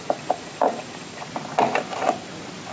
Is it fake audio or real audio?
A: real